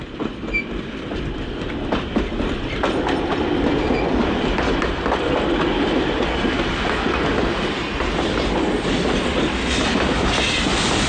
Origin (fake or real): real